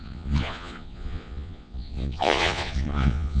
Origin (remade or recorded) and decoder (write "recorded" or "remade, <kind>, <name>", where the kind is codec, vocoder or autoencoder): remade, vocoder, Vocos